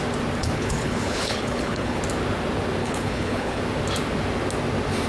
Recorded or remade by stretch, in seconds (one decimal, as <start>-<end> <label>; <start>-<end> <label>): 0.0-0.4 recorded; 0.4-2.0 remade; 2.0-2.8 recorded; 2.8-3.6 remade; 3.6-5.1 recorded